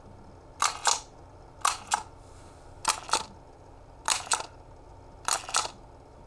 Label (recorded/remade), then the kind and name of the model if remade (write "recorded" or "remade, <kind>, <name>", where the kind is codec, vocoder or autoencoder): recorded